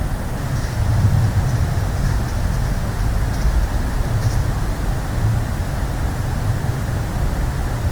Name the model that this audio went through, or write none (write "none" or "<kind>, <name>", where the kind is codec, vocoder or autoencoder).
none